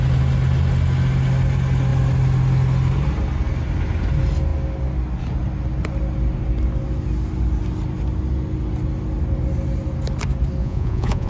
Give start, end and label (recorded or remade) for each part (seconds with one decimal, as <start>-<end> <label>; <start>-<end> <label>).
0.0-10.6 recorded; 10.6-11.3 remade